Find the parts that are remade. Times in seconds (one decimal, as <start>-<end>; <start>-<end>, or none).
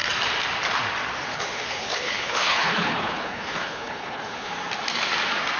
1.3-4.5